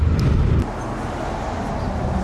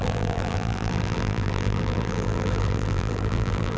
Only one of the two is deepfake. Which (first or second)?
second